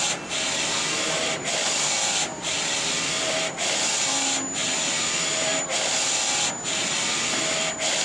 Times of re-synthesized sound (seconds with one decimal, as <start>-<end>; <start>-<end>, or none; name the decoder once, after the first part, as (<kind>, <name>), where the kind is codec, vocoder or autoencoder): none